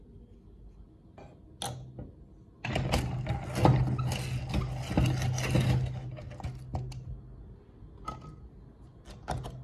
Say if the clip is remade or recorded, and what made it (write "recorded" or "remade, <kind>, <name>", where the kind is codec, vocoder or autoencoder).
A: recorded